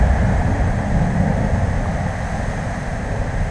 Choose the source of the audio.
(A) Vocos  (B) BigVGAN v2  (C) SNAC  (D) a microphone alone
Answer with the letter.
D